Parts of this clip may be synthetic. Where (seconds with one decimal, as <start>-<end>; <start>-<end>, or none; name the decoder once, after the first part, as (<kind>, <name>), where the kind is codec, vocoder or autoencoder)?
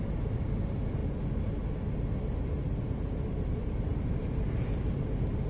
3.9-5.5 (vocoder, BigVGAN v2)